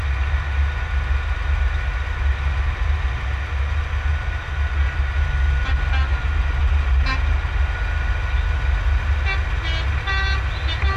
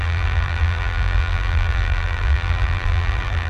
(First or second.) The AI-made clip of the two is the second